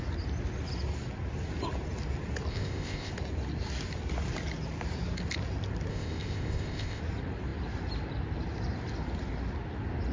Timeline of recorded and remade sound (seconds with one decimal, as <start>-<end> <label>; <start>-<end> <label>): 0.0-2.5 recorded; 2.5-3.1 remade; 3.1-5.9 recorded; 5.9-7.0 remade; 7.0-10.1 recorded